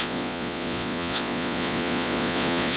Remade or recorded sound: remade